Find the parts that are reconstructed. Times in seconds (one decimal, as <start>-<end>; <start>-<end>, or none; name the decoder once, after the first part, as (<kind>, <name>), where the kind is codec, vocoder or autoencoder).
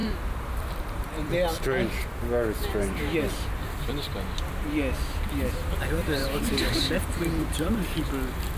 0.0-1.3 (vocoder, BigVGAN v2); 6.0-8.0